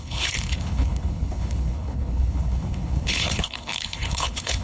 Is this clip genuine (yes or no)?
no